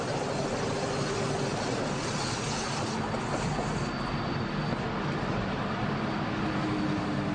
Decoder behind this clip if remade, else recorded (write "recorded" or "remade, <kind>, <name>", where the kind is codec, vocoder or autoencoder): recorded